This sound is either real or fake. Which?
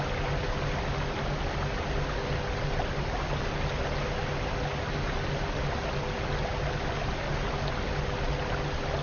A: real